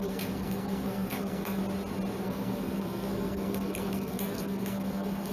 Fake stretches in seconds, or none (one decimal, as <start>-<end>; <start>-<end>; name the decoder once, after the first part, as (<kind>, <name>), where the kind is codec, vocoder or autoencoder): 0.0-1.6 (codec, SNAC); 2.2-5.3